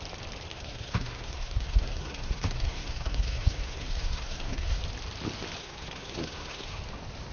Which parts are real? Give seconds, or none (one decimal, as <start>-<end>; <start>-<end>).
0.0-0.5; 4.8-5.6; 6.8-7.3